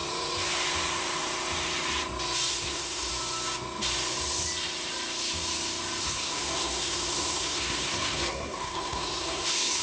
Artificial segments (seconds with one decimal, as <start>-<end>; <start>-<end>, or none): 2.5-3.1; 6.0-9.8